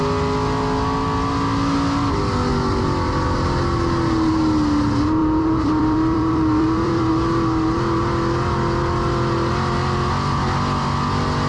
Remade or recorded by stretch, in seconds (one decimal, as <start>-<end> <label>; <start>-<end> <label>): 0.0-5.2 recorded; 5.2-7.1 remade; 7.1-11.5 recorded